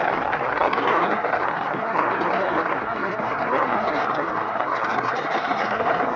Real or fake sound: fake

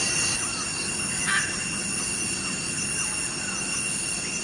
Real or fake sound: real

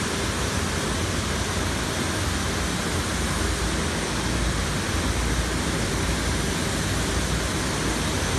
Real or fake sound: real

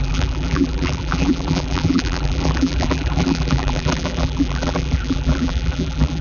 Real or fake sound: fake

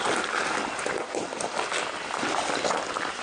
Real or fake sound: real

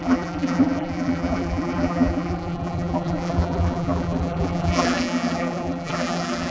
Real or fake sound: fake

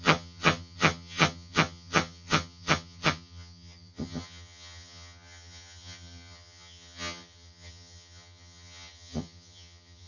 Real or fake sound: fake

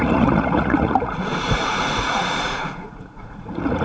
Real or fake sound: fake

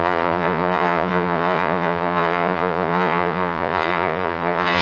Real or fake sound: fake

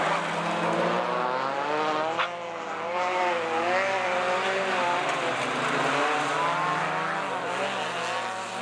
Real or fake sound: real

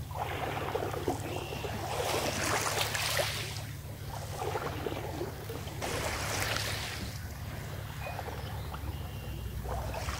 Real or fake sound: real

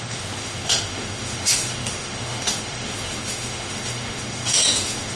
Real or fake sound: fake